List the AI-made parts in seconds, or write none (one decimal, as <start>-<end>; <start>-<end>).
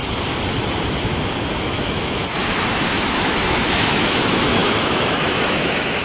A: 1.5-2.2; 3.1-6.0